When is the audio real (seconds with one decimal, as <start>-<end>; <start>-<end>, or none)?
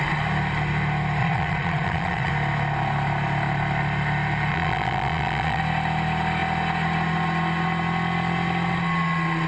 0.0-1.2; 2.3-4.5; 5.6-9.5